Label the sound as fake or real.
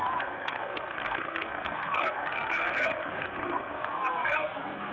fake